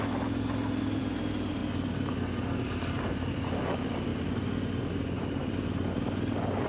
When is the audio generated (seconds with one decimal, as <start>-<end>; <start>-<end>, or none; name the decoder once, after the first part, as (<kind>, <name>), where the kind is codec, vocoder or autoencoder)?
0.0-4.1 (vocoder, BigVGAN v2); 5.3-6.7